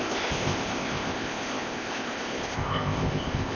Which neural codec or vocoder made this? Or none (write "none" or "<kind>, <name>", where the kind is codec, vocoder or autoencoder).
codec, ZipCodec